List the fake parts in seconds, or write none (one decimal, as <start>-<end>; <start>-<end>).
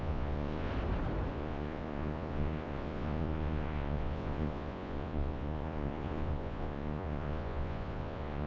0.0-0.7; 1.3-8.5